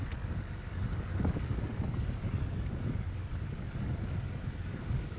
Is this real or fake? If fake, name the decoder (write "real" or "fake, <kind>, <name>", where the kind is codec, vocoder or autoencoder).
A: fake, codec, DAC